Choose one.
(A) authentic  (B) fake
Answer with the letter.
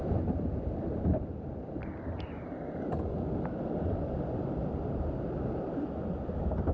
A